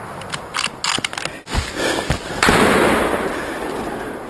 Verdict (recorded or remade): recorded